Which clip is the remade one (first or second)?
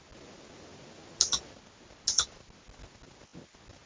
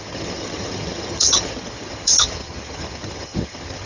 second